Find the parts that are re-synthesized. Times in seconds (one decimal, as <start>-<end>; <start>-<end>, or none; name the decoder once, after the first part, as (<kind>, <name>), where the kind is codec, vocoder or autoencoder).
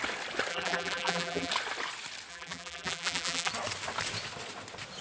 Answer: 0.5-1.5 (vocoder, BigVGAN v2); 2.3-3.5